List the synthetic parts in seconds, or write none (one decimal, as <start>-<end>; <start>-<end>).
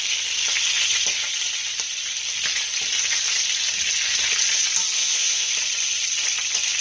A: 5.0-5.5